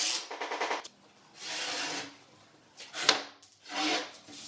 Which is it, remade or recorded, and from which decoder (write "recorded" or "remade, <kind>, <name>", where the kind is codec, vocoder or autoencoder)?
recorded